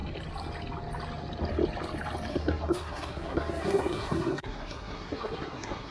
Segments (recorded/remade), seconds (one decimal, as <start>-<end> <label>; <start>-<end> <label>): 0.0-2.3 recorded; 2.3-5.9 remade